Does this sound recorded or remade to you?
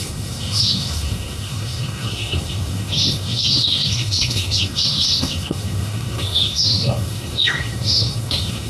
remade